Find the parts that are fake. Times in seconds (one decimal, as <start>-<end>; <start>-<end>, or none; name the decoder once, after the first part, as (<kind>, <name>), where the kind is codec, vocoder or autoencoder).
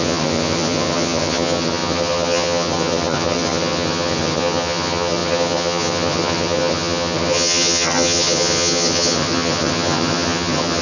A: 0.0-10.8 (vocoder, HiFi-GAN)